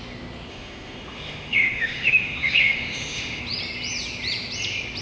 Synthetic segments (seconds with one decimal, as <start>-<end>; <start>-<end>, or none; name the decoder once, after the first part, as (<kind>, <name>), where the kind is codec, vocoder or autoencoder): 0.5-3.4 (autoencoder, DAC-VAE)